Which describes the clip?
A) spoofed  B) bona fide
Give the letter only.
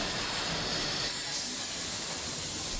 B